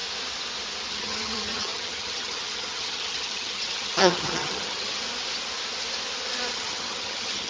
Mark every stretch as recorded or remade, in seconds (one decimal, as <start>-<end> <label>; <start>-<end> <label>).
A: 0.0-0.9 recorded; 0.9-5.0 remade; 5.0-6.5 recorded; 6.5-7.5 remade

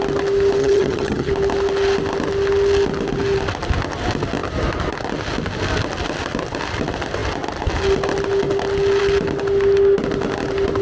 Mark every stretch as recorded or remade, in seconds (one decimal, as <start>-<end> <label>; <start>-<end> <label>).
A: 0.0-0.6 recorded; 0.6-1.3 remade; 1.3-10.8 recorded

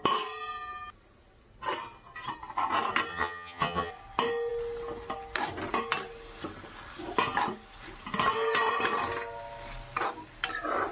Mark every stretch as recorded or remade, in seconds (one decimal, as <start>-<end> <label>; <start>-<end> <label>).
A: 0.0-3.1 recorded; 3.1-3.9 remade; 3.9-10.9 recorded

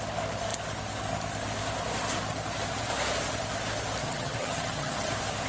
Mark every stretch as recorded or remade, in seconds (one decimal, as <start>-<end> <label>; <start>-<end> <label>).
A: 0.0-4.0 recorded; 4.0-5.1 remade; 5.1-5.5 recorded